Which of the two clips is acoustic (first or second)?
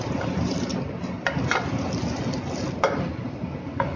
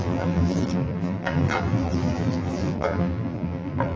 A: first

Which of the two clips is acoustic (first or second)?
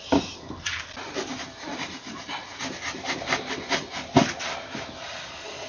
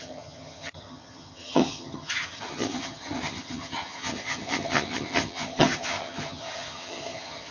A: first